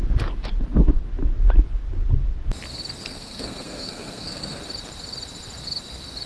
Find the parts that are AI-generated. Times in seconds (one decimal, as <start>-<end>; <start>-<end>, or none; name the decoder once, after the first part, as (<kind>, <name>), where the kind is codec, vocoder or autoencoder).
3.1-4.6 (codec, SNAC)